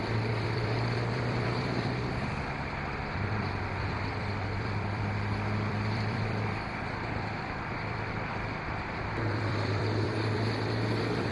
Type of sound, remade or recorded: remade